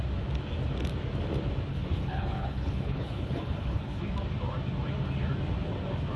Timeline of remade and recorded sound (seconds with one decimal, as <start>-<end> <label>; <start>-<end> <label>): 0.0-1.7 recorded; 1.7-4.0 remade; 4.0-6.2 recorded